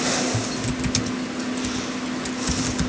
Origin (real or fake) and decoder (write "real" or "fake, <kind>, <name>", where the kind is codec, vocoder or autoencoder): real